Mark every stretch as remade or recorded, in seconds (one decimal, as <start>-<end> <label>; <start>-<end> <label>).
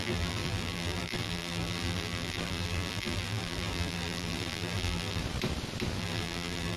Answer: 0.0-5.2 remade; 5.2-6.0 recorded; 6.0-6.8 remade